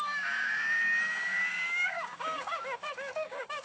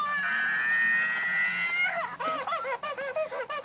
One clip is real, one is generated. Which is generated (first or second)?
first